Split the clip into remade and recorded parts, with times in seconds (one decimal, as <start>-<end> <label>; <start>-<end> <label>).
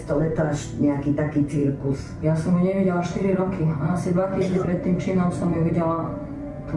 0.0-0.5 remade; 0.5-1.2 recorded; 1.2-6.8 remade